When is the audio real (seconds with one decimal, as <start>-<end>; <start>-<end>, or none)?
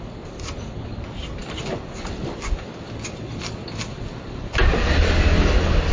0.0-5.9